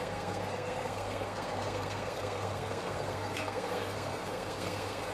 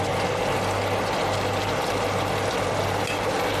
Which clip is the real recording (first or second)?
second